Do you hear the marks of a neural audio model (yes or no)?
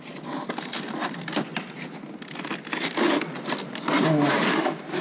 no